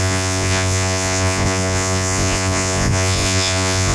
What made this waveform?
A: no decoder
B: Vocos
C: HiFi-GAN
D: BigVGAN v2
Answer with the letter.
B